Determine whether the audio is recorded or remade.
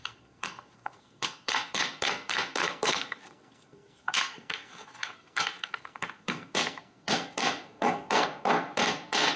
remade